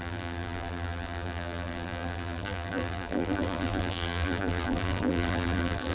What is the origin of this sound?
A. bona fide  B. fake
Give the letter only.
B